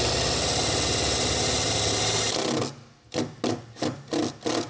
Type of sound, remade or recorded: recorded